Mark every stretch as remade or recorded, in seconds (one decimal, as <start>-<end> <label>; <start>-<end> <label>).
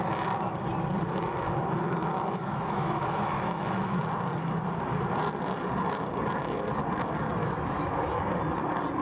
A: 0.0-2.0 recorded; 2.0-4.0 remade; 4.0-7.4 recorded; 7.4-8.0 remade; 8.0-9.0 recorded